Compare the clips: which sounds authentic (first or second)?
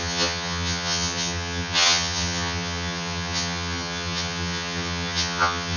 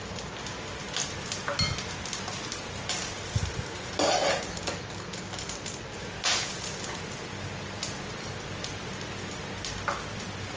second